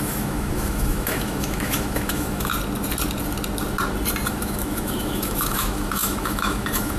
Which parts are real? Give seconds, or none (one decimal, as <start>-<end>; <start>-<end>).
2.5-4.3